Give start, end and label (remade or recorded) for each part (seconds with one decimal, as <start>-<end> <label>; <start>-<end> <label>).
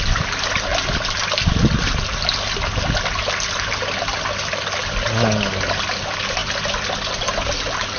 0.0-8.0 recorded